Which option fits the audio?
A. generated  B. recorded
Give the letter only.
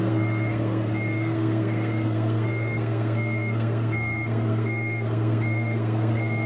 A